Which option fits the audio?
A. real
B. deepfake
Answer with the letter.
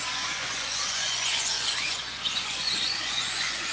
B